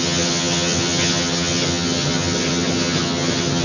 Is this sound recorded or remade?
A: remade